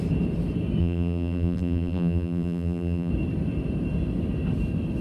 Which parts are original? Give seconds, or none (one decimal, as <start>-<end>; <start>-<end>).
0.0-0.8; 3.1-5.0